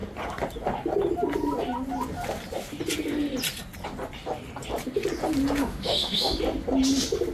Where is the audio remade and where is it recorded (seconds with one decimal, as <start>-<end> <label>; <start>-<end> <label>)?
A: 0.0-5.6 recorded; 5.6-6.4 remade; 6.4-7.3 recorded